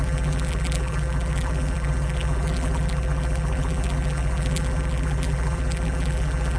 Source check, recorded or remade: remade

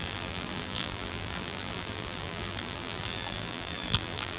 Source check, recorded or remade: remade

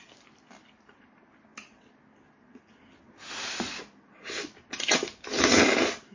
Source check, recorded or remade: recorded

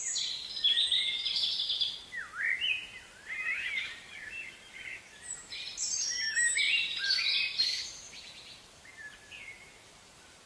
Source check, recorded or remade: remade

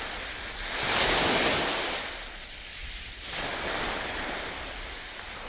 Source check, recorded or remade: recorded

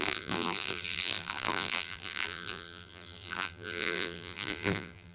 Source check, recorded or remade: remade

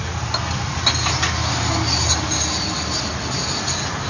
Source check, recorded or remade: recorded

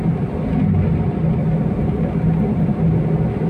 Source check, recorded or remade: recorded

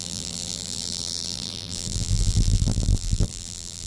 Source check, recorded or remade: remade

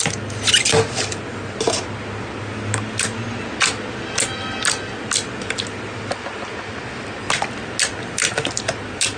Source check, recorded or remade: recorded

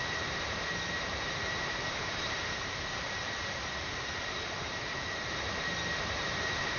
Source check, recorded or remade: remade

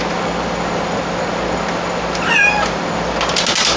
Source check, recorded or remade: recorded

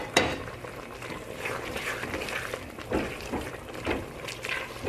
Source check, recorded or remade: remade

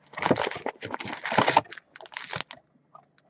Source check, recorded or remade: recorded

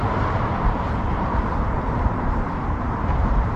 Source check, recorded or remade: remade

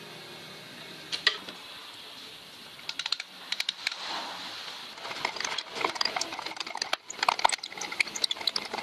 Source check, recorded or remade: remade